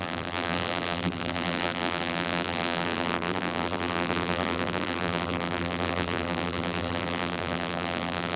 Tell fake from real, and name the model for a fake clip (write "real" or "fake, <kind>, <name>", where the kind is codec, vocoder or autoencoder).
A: fake, vocoder, BigVGAN v2